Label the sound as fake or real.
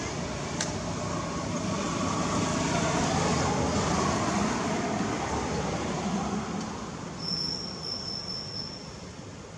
real